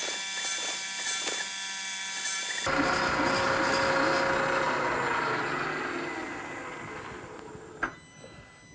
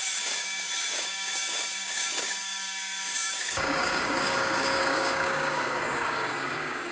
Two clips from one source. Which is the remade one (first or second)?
second